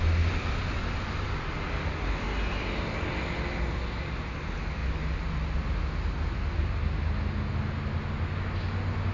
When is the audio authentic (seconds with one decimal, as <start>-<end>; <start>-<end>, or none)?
0.0-9.1